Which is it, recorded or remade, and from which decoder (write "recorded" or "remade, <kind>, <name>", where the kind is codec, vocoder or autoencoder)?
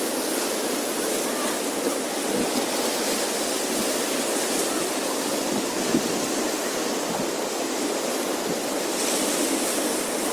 recorded